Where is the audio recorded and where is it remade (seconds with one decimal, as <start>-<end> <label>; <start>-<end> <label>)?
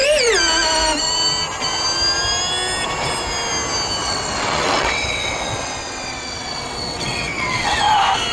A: 0.0-4.0 recorded; 4.0-7.8 remade; 7.8-8.3 recorded